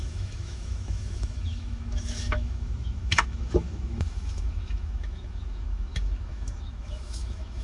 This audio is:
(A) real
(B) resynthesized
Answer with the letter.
B